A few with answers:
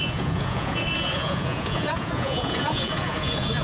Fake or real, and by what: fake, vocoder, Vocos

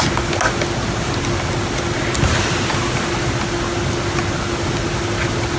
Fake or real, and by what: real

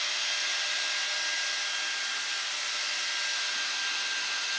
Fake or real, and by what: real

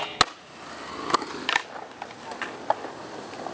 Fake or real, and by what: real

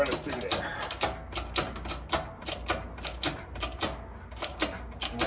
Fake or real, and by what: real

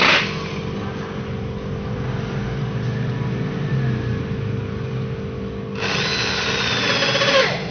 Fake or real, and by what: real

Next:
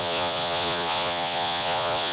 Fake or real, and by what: fake, vocoder, Vocos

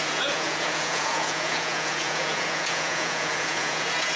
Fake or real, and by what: fake, vocoder, Vocos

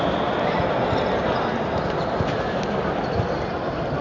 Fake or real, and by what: real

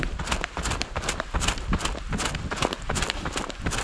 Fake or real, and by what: real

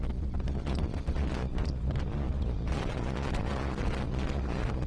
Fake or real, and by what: fake, vocoder, Vocos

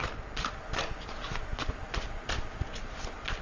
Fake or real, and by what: real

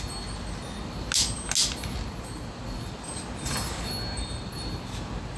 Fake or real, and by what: real